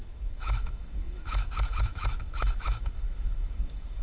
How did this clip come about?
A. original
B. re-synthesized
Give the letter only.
B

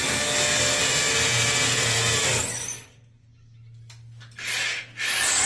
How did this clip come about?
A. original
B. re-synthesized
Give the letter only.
A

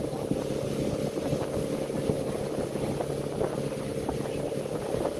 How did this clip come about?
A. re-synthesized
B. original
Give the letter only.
B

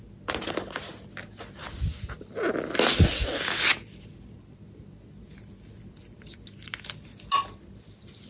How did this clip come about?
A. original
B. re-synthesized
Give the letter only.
A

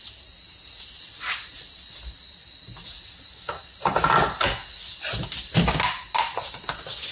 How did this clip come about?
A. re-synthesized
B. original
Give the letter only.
B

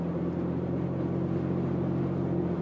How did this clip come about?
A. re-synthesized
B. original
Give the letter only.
B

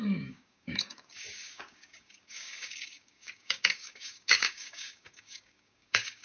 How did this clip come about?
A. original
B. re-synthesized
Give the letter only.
B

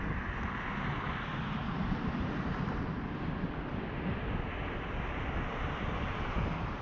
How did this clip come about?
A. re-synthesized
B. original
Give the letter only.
B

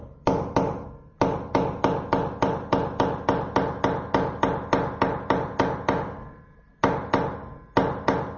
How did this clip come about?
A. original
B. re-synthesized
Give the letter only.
A